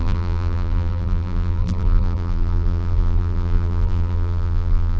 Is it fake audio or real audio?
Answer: fake